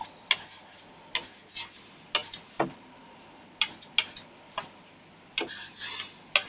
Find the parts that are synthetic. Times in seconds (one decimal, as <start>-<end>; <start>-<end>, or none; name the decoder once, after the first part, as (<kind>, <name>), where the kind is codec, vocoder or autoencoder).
none